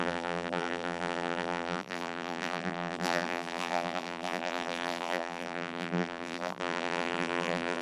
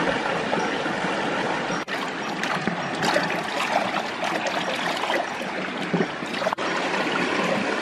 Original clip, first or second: second